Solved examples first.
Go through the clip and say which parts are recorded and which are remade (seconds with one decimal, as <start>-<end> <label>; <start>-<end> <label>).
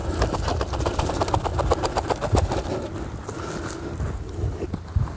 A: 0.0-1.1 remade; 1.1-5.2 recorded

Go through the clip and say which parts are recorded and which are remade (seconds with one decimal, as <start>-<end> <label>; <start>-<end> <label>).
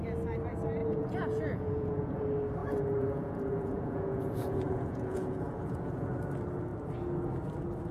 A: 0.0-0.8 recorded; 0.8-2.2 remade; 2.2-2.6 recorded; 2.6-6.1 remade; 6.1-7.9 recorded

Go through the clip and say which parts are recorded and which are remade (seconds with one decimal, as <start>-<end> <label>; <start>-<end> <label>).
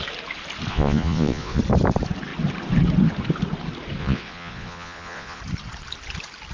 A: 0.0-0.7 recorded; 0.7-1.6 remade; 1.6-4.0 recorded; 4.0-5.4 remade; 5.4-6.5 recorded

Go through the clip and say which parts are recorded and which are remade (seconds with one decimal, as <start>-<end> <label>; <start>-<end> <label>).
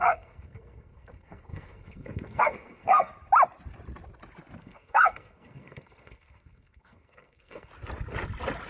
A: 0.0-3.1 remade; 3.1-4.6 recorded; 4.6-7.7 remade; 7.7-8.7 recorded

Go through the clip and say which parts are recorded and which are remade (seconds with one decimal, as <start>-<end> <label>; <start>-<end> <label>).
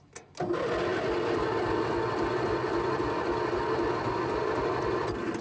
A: 0.0-5.4 recorded